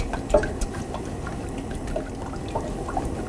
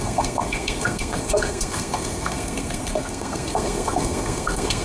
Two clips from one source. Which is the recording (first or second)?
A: first